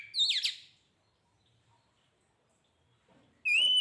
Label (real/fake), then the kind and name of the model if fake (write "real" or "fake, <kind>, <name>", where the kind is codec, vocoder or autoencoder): real